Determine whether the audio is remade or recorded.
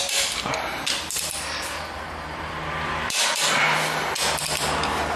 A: remade